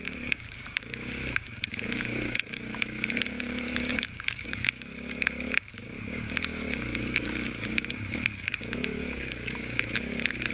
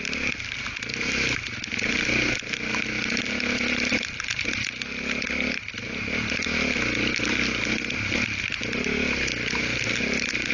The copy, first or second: first